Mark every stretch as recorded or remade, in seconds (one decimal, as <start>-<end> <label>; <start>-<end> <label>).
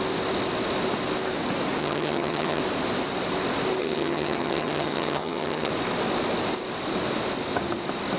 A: 0.0-1.8 recorded; 1.8-2.6 remade; 2.6-3.8 recorded; 3.8-5.7 remade; 5.7-8.2 recorded